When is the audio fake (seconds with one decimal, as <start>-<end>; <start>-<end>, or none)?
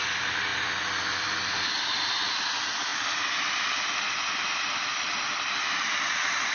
none